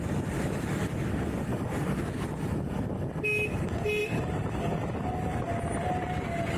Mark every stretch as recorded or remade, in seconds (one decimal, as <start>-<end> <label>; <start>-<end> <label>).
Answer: 0.0-1.5 recorded; 1.5-2.0 remade; 2.0-4.0 recorded; 4.0-5.5 remade; 5.5-6.6 recorded